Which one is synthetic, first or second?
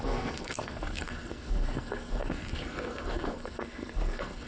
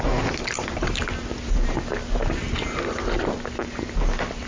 first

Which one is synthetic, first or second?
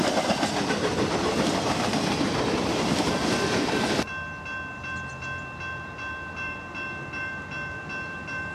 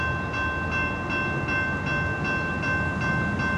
first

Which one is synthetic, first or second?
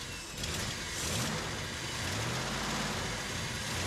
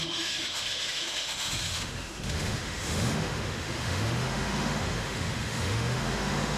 second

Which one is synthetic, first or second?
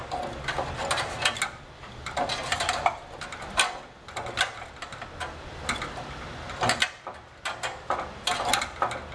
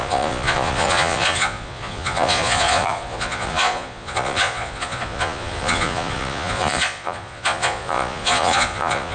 second